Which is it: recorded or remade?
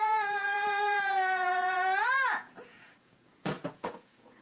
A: remade